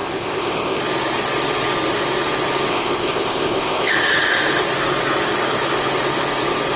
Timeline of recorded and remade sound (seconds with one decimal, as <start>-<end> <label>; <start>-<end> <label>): 0.0-0.8 remade; 0.8-2.7 recorded; 2.7-3.9 remade; 3.9-6.8 recorded